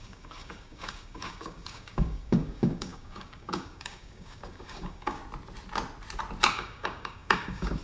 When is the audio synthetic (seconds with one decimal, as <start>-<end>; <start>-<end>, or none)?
0.0-5.2; 6.5-7.8